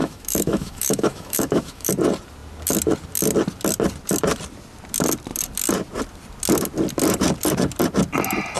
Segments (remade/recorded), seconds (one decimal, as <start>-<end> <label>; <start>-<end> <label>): 0.0-1.9 remade; 1.9-8.6 recorded